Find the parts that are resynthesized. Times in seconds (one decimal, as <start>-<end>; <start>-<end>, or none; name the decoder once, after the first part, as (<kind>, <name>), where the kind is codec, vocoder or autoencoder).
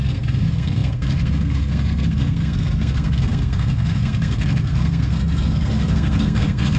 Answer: 0.0-6.8 (codec, SNAC)